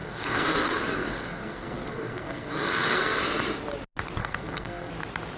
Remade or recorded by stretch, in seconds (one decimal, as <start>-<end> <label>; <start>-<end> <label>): 0.0-3.2 remade; 3.2-4.2 recorded; 4.2-4.9 remade; 4.9-5.4 recorded